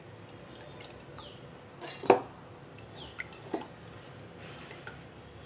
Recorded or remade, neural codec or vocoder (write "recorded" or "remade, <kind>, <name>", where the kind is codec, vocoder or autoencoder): recorded